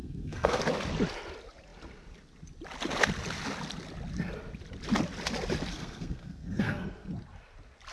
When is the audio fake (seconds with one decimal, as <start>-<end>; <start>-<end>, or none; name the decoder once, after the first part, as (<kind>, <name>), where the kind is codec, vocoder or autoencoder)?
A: 0.0-0.6 (codec, SNAC); 5.7-7.1

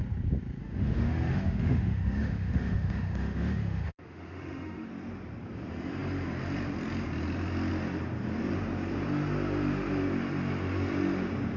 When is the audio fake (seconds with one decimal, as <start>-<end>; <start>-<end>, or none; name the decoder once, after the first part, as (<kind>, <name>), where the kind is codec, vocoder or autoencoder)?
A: 0.6-4.9 (autoencoder, DAC-VAE)